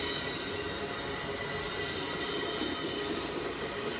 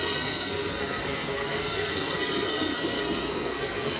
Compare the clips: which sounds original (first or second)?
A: first